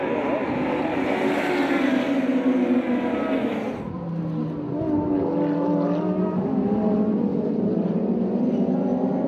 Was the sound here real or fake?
real